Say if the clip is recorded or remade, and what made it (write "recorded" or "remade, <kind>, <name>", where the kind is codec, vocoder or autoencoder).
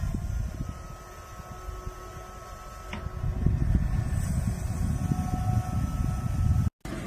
recorded